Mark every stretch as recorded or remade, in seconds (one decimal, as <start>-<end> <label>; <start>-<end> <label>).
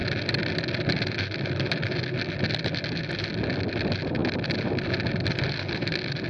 0.0-6.3 recorded